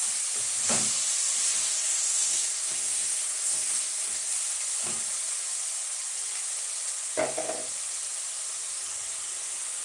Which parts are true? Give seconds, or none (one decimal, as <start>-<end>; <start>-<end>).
0.0-1.6; 4.3-9.8